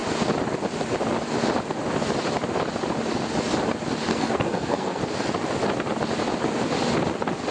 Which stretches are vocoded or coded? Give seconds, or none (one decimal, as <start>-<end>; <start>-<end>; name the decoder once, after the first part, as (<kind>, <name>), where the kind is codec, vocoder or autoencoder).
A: 4.1-5.0 (codec, SNAC)